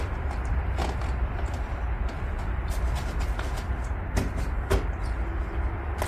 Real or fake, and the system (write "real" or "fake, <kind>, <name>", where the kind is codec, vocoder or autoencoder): real